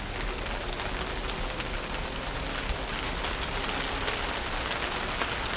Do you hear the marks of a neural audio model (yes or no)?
no